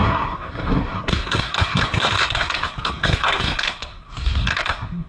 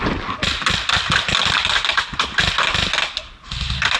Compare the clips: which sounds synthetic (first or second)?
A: first